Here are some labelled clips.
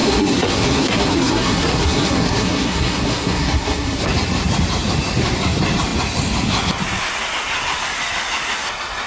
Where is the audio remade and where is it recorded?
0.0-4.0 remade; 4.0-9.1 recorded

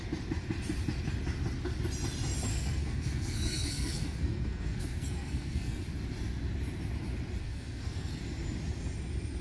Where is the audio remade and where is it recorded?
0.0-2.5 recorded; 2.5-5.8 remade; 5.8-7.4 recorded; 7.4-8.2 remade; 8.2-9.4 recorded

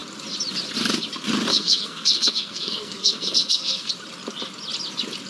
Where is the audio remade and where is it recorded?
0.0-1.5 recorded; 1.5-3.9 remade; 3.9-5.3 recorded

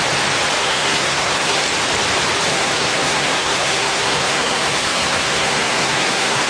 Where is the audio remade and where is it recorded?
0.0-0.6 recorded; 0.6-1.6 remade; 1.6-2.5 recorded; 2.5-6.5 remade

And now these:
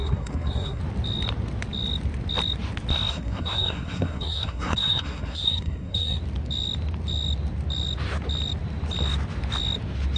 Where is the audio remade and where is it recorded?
0.0-0.8 remade; 0.8-3.1 recorded; 3.1-6.2 remade; 6.2-10.2 recorded

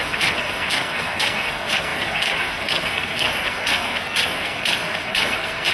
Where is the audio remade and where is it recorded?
0.0-5.7 remade